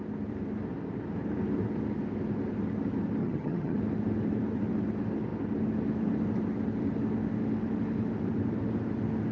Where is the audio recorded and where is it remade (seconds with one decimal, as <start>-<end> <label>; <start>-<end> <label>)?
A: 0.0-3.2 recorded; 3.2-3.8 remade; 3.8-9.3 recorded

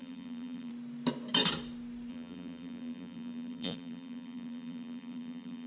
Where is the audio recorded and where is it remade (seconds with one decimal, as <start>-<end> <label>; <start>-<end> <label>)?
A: 0.0-0.7 remade; 0.7-2.1 recorded; 2.1-5.7 remade

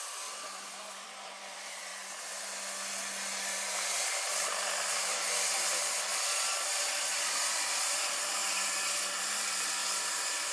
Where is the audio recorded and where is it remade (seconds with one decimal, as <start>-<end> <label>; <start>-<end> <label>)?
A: 0.0-1.9 remade; 1.9-4.3 recorded; 4.3-9.8 remade; 9.8-10.5 recorded

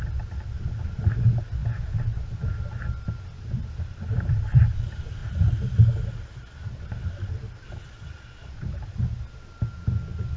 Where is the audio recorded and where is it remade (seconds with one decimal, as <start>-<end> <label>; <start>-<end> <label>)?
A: 0.0-10.4 recorded

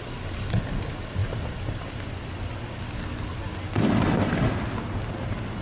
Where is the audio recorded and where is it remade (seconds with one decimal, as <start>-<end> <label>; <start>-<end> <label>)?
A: 0.0-5.6 recorded

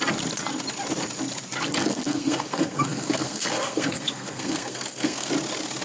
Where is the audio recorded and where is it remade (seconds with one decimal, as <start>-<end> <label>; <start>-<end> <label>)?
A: 0.0-1.8 recorded; 1.8-5.3 remade; 5.3-5.8 recorded